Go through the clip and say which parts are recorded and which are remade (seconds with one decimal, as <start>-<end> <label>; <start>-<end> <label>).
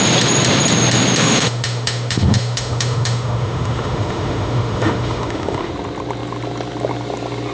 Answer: 0.0-1.2 recorded; 1.2-5.7 remade; 5.7-7.5 recorded